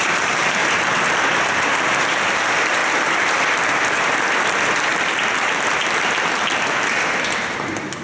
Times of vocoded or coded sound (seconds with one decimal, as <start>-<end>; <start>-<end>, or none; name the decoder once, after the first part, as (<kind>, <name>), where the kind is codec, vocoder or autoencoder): 0.0-0.6 (vocoder, BigVGAN v2); 1.7-2.8; 3.3-8.0